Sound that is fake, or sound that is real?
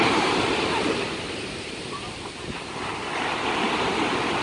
real